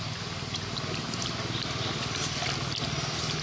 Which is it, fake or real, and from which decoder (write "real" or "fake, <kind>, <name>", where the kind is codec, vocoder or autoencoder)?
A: real